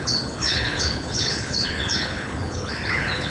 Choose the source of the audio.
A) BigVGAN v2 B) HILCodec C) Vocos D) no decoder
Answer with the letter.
B